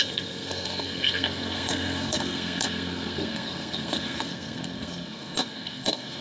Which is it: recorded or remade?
remade